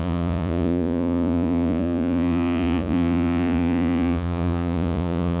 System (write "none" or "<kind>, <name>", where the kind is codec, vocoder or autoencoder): vocoder, Vocos